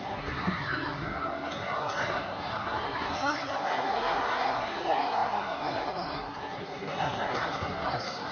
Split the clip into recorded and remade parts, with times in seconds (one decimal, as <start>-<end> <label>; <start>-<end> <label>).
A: 0.0-8.3 remade